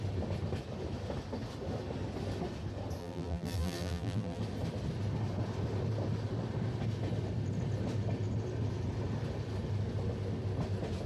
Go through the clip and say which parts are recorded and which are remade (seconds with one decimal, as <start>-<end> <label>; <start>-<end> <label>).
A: 0.0-3.0 recorded; 3.0-4.4 remade; 4.4-11.1 recorded